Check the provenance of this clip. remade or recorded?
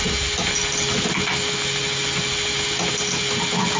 recorded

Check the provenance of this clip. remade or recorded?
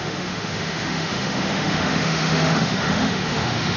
remade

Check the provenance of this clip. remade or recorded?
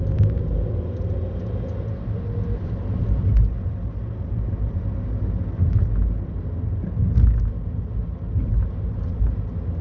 recorded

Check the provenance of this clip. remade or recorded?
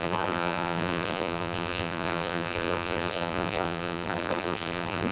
remade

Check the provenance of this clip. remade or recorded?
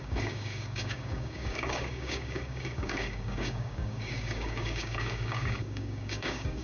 remade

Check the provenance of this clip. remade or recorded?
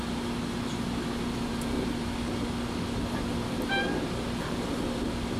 recorded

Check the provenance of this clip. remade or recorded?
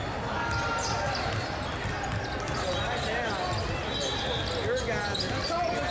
recorded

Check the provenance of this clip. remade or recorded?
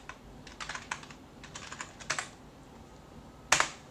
recorded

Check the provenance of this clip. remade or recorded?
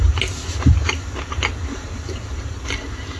recorded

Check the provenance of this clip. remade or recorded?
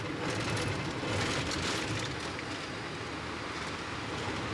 recorded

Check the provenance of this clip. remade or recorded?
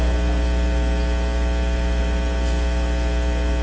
recorded